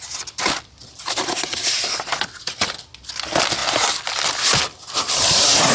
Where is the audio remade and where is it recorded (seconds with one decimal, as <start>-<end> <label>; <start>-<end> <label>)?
0.0-5.7 recorded